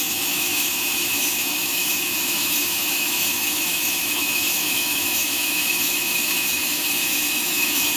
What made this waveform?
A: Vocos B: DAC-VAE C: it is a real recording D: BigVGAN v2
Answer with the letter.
B